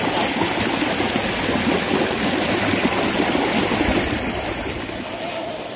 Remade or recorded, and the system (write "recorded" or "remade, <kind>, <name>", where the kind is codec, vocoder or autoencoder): recorded